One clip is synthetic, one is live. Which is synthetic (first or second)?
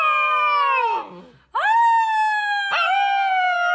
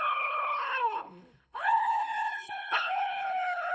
second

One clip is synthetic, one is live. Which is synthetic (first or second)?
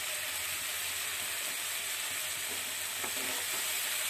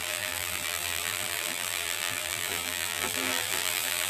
second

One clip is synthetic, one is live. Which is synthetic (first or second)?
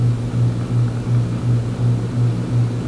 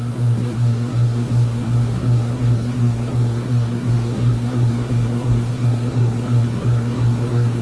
second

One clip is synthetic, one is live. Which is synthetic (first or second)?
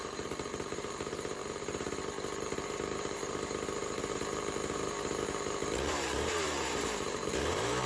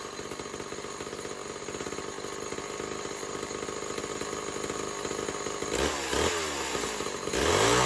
first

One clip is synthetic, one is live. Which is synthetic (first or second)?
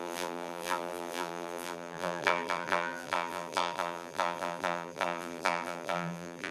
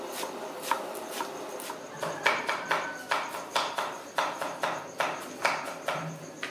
first